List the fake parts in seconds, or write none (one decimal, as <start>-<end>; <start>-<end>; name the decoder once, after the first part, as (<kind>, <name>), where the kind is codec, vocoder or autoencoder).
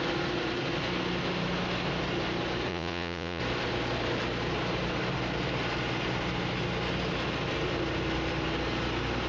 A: 2.7-3.4 (vocoder, Vocos)